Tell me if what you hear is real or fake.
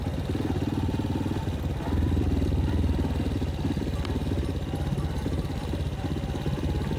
real